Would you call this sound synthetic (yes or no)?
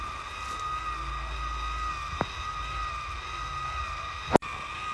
no